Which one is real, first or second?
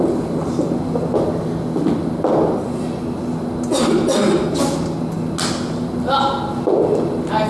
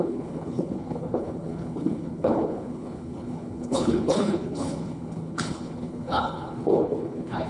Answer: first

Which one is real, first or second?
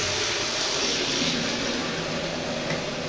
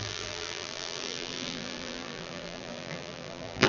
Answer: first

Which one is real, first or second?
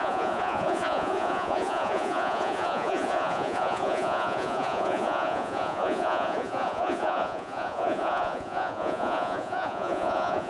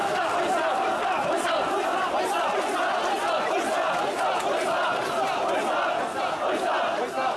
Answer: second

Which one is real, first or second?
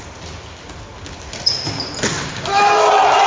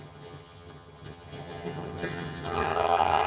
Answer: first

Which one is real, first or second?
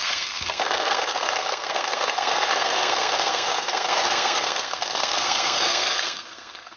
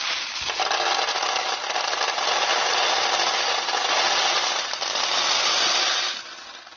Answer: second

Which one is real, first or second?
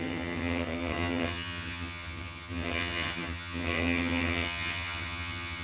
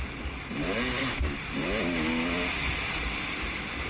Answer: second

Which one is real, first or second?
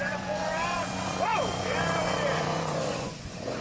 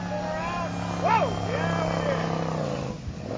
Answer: second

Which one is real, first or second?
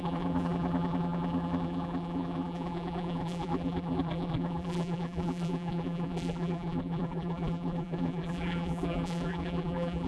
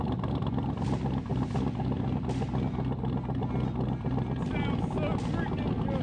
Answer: second